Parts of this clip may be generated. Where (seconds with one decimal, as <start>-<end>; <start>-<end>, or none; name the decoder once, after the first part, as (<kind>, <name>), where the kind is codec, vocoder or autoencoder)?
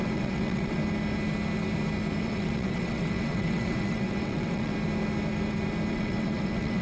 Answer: 0.0-0.8 (vocoder, WaveNeXt); 2.2-4.7; 5.9-6.8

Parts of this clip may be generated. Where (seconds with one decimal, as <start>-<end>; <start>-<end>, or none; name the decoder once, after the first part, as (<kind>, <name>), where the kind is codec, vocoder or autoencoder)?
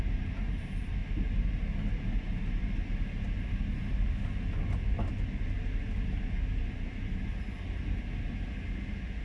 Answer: none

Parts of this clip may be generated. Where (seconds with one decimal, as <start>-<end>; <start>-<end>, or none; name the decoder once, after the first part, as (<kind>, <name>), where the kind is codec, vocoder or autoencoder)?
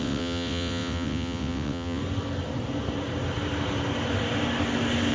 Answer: 0.0-2.0 (vocoder, WaveNeXt)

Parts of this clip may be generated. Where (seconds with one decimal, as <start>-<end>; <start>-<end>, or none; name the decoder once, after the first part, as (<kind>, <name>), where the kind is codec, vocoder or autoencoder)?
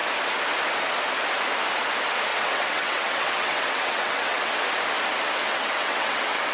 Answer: 2.3-4.5 (vocoder, WaveNeXt); 5.4-6.5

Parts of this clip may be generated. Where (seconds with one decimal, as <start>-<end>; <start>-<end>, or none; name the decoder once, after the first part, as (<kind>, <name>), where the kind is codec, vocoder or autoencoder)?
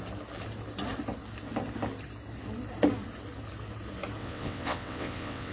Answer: 4.2-5.5 (vocoder, WaveNeXt)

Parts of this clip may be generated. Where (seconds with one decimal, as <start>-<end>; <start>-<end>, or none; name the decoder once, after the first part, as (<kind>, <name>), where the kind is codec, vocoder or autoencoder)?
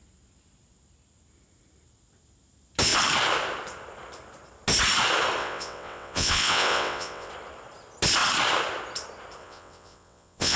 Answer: 5.4-7.3 (vocoder, WaveNeXt); 9.4-10.6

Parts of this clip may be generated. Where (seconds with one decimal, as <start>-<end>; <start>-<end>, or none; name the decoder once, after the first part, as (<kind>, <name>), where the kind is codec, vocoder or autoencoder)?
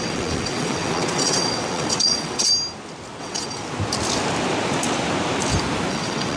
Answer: 0.0-2.5 (vocoder, WaveNeXt); 3.2-3.6; 5.9-6.4